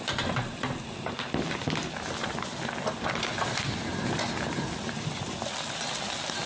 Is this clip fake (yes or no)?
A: no